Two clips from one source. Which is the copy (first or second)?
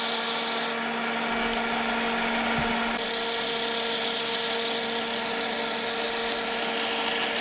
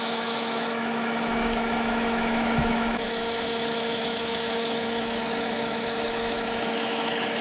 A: second